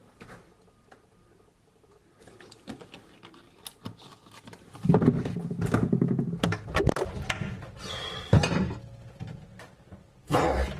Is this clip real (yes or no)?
yes